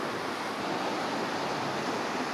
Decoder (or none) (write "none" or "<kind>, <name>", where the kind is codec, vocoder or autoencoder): none